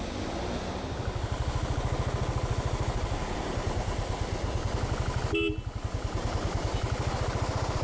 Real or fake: real